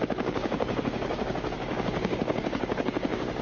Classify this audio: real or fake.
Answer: fake